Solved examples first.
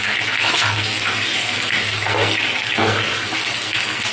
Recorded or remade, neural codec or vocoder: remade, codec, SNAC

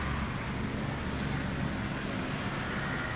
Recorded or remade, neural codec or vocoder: recorded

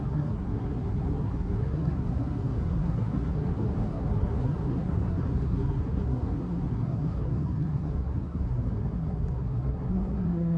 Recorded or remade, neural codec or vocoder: remade, codec, SNAC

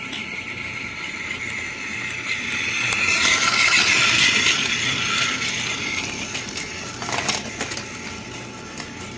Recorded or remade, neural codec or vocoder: recorded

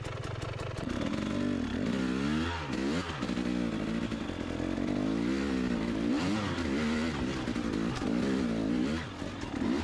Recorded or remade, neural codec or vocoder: recorded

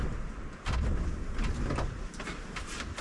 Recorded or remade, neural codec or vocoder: recorded